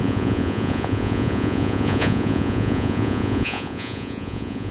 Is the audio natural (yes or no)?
no